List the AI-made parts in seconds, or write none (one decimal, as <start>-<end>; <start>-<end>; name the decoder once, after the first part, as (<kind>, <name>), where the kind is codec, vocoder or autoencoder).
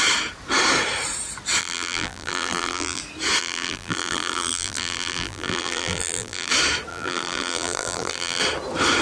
1.6-3.0 (vocoder, BigVGAN v2); 3.4-6.5; 6.9-8.4